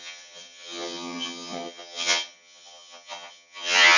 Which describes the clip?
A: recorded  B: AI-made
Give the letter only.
B